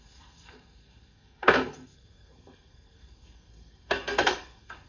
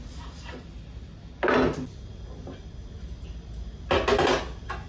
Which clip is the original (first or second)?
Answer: second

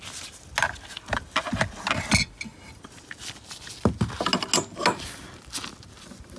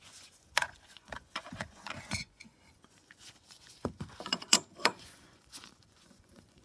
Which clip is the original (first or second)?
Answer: first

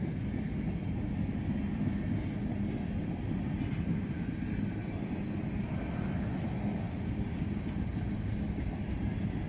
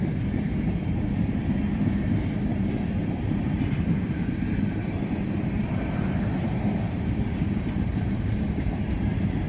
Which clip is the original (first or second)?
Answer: first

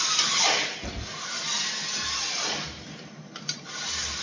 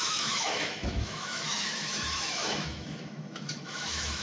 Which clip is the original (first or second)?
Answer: first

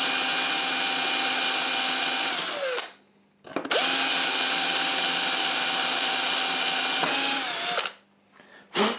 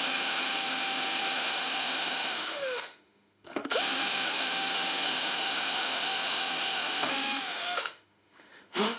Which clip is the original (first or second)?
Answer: first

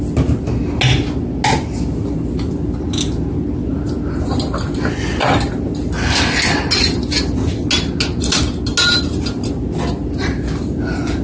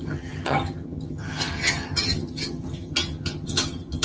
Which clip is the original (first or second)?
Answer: first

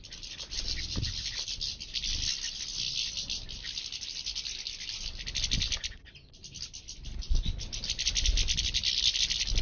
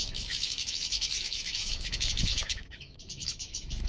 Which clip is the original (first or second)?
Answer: first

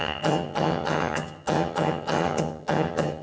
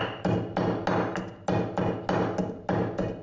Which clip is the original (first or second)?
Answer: second